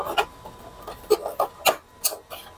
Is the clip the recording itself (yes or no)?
yes